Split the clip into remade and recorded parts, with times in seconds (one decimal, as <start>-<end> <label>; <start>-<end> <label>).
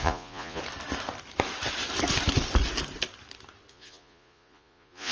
0.0-0.6 remade; 0.6-3.7 recorded; 3.7-5.1 remade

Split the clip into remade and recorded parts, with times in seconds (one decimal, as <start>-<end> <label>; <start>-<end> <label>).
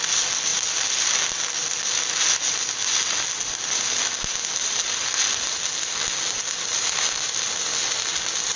0.0-8.6 recorded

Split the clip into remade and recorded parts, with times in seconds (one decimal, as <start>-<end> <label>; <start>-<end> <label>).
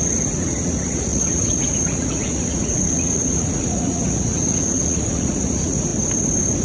0.0-5.9 remade; 5.9-6.6 recorded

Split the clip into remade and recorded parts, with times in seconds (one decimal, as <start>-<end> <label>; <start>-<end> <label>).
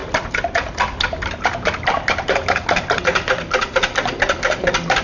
0.0-5.0 recorded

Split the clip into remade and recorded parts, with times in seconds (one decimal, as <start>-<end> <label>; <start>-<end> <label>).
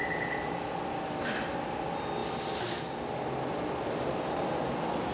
0.0-5.1 recorded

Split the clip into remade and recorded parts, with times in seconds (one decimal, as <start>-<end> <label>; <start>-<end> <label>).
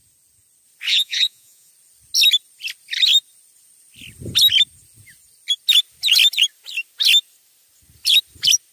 0.0-0.9 recorded; 0.9-1.7 remade; 1.7-8.7 recorded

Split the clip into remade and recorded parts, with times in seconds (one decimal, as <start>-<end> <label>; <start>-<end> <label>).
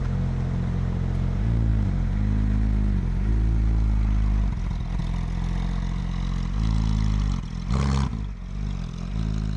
0.0-9.6 recorded